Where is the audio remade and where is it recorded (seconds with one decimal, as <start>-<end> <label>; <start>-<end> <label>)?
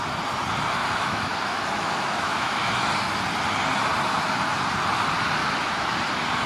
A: 0.0-0.8 recorded; 0.8-2.9 remade; 2.9-5.4 recorded; 5.4-6.0 remade; 6.0-6.5 recorded